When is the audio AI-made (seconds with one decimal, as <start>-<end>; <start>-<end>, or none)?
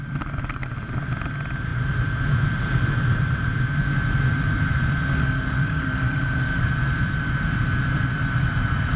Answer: 5.1-6.6